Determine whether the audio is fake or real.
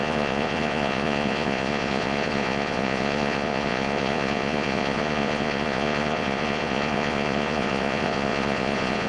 fake